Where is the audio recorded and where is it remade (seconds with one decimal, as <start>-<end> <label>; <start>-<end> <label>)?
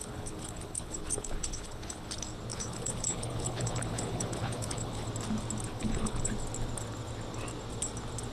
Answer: 0.0-2.1 remade; 2.1-2.5 recorded; 2.5-5.1 remade; 5.1-5.7 recorded; 5.7-6.3 remade; 6.3-8.3 recorded